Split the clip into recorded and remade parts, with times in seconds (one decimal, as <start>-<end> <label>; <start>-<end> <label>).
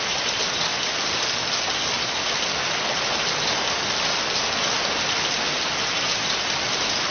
0.0-7.1 recorded